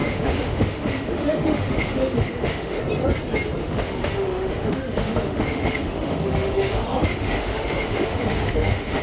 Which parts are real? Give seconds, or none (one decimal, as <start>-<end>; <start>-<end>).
2.8-3.6